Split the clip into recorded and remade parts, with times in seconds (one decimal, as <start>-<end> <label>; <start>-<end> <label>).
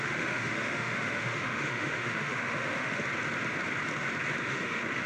0.0-3.0 remade; 3.0-4.4 recorded; 4.4-5.1 remade